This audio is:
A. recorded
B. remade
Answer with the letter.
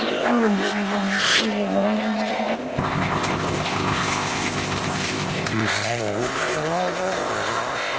B